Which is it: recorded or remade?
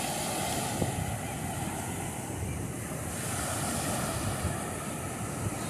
recorded